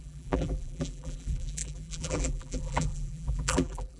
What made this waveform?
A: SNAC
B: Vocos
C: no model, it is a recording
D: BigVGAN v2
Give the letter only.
D